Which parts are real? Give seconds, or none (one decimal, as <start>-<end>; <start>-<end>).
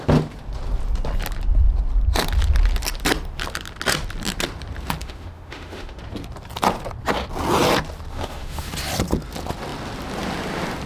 0.0-5.0; 6.0-8.1; 8.7-10.9